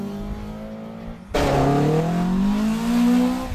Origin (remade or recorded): recorded